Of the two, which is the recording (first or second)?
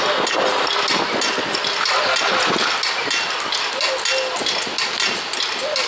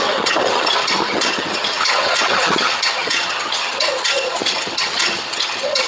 first